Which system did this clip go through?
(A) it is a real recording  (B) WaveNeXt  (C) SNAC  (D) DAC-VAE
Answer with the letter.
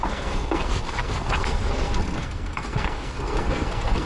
C